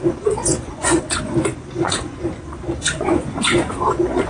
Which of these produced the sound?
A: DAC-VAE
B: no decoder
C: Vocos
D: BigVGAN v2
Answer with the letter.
C